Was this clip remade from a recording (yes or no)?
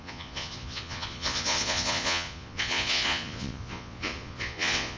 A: yes